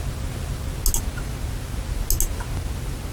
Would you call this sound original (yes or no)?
yes